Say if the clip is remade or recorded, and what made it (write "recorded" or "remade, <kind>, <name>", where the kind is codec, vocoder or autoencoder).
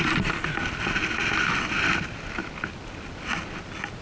recorded